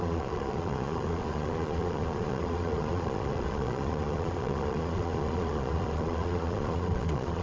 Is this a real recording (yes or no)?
no